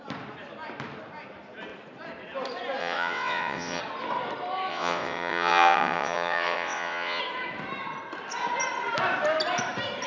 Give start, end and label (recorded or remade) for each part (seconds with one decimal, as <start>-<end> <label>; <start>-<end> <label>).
0.0-2.8 recorded; 2.8-3.8 remade; 3.8-4.7 recorded; 4.7-7.2 remade; 7.2-10.1 recorded